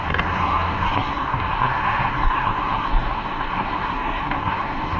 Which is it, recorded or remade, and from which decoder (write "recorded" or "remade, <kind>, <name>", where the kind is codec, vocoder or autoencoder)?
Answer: remade, codec, SNAC